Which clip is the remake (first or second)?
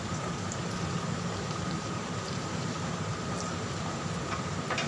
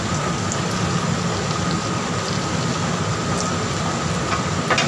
first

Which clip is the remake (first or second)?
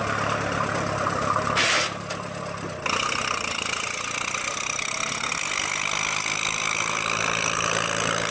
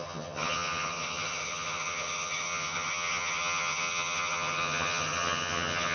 second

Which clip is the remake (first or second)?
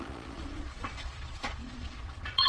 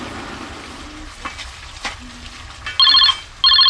first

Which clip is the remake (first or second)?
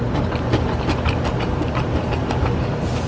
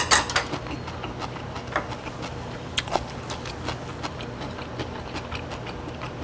first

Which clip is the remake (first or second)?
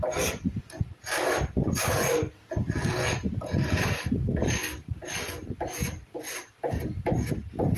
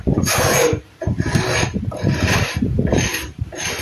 second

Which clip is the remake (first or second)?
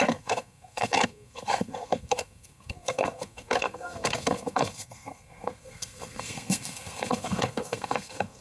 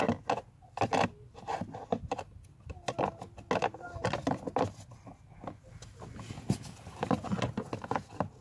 first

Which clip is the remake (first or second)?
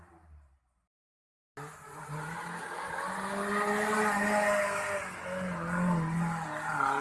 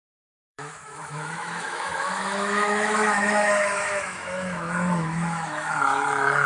second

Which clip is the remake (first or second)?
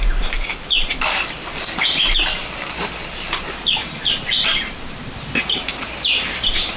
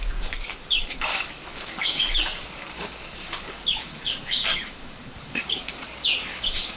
second